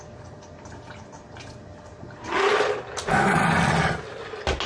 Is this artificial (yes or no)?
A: no